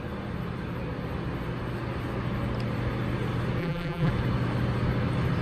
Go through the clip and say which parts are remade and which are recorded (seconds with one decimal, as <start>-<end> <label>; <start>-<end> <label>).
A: 0.0-3.6 recorded; 3.6-4.1 remade; 4.1-5.4 recorded